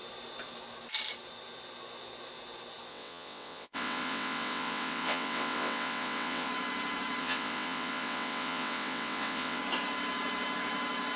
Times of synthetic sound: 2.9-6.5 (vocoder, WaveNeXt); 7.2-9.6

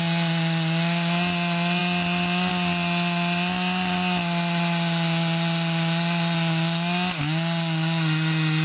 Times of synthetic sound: none

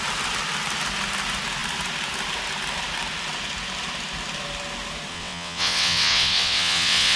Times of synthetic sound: 5.1-7.2 (vocoder, WaveNeXt)

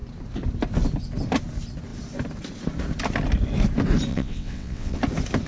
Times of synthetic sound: 4.1-5.0 (vocoder, WaveNeXt)

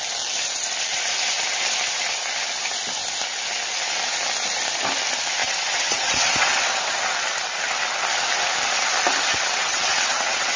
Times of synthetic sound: 5.4-6.7 (vocoder, WaveNeXt); 9.3-10.6